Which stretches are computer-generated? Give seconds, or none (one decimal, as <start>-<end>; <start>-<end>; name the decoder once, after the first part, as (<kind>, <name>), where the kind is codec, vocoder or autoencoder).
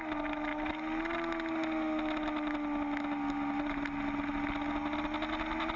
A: none